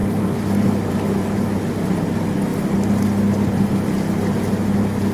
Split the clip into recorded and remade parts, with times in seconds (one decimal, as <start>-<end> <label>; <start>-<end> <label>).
0.0-0.9 remade; 0.9-5.1 recorded